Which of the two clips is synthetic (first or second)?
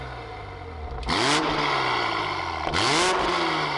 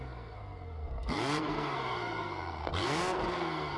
second